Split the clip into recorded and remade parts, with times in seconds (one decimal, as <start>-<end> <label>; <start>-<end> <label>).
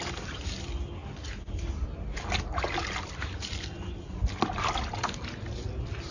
0.0-6.1 recorded